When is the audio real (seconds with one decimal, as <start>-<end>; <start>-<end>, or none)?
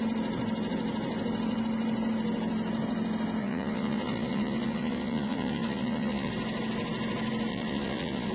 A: 0.0-3.4; 6.3-7.5